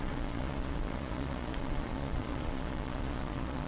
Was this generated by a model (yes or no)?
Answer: yes